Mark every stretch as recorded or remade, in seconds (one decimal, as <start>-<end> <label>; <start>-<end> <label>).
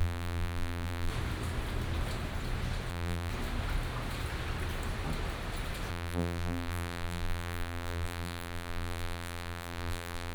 0.0-1.1 remade; 1.1-2.9 recorded; 2.9-3.3 remade; 3.3-5.9 recorded; 5.9-10.3 remade